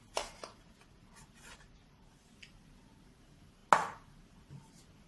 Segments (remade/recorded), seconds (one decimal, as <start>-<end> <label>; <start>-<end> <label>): 0.0-5.1 recorded